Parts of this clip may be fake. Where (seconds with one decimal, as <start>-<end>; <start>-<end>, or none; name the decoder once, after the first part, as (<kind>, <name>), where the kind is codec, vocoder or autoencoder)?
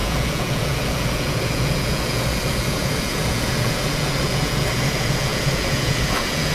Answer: 0.0-6.5 (vocoder, Vocos)